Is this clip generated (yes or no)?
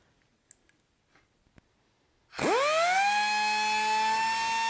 no